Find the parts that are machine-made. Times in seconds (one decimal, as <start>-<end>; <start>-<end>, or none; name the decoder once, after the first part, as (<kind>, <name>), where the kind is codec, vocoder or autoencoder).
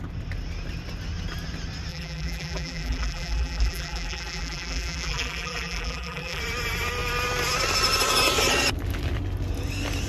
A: 1.9-6.4 (vocoder, BigVGAN v2)